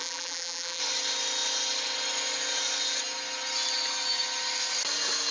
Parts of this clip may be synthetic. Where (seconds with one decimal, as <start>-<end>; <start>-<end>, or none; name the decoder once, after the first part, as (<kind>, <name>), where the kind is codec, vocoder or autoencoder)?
0.0-0.8 (vocoder, BigVGAN v2)